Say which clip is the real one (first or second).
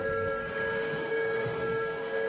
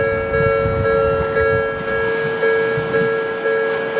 second